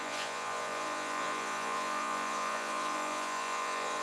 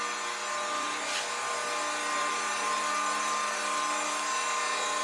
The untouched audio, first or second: second